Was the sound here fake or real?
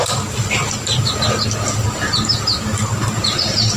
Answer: real